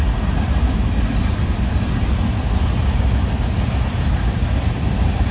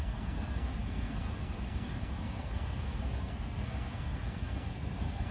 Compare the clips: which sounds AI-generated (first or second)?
second